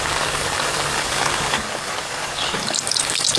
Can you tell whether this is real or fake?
fake